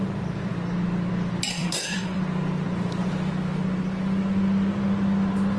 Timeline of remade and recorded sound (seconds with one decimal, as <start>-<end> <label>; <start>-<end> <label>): 0.0-1.5 recorded; 1.5-2.2 remade; 2.2-5.6 recorded